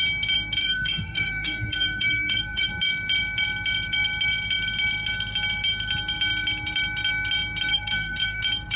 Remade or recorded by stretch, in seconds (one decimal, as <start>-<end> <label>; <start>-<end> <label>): 0.0-0.6 recorded; 0.6-2.7 remade; 2.7-7.7 recorded; 7.7-8.4 remade; 8.4-8.8 recorded